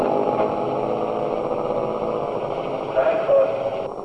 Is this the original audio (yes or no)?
yes